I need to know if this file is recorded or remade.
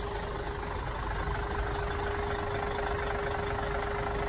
recorded